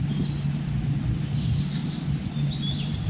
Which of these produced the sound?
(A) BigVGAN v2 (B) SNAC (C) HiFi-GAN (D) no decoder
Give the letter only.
D